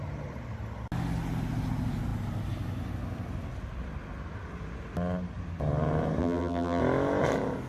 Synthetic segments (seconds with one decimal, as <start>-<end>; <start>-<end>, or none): 6.2-6.8